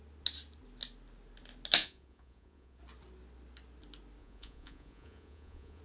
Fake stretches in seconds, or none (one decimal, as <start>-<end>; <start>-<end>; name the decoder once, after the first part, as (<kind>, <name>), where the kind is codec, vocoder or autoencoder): 1.8-2.8 (vocoder, Vocos); 4.2-5.8